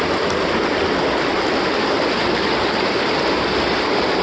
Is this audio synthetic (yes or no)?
no